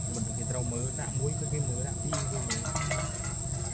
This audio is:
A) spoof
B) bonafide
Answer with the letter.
B